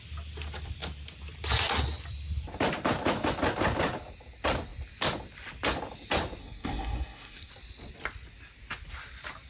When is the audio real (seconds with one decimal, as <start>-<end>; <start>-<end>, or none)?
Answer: 0.0-6.4; 7.5-9.5